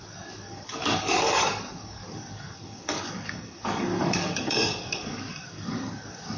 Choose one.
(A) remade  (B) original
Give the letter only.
A